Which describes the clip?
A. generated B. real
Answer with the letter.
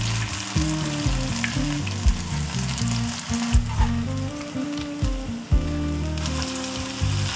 B